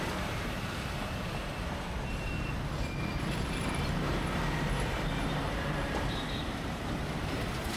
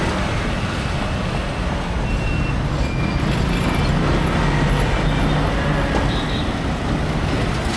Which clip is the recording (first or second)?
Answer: second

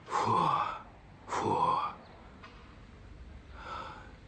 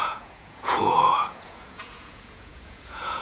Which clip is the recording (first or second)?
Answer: first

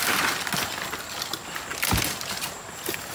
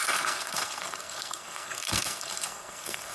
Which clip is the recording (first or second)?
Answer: first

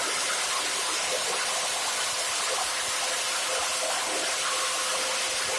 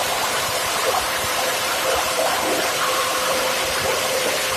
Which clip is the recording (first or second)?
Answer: first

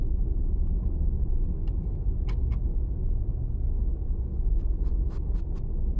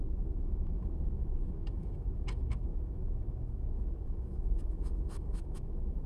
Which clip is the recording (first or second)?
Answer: first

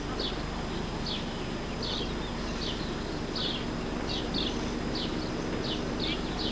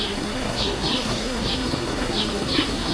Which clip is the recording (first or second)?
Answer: first